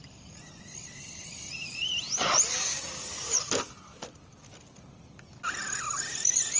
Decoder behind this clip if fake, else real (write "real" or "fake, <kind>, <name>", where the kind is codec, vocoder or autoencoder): real